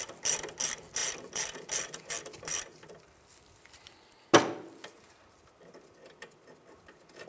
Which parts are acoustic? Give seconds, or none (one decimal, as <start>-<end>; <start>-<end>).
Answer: 0.0-7.3